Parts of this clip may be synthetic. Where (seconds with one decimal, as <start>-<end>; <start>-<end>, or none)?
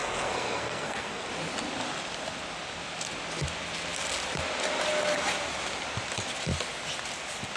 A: 0.0-1.3